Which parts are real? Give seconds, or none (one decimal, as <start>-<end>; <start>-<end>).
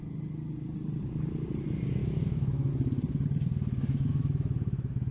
0.0-2.0; 2.7-4.1